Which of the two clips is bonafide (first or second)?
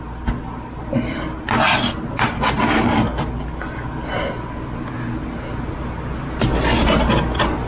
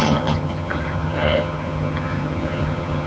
first